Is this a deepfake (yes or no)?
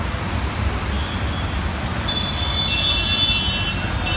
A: no